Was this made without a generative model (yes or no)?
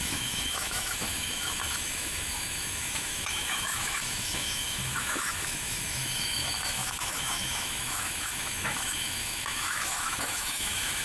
no